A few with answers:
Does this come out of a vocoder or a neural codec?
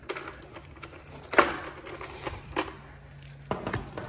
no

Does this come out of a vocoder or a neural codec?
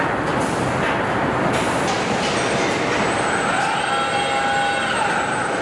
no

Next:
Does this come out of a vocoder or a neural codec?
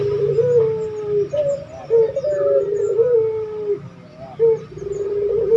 no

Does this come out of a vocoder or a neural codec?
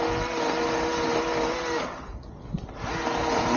no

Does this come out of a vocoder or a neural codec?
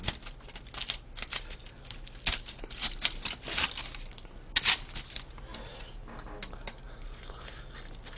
no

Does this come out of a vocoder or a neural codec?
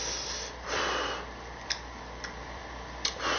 no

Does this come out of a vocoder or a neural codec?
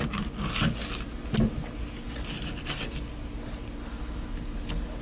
no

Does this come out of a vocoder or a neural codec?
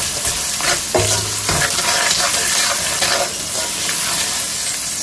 no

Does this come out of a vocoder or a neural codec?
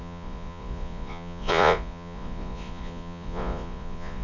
yes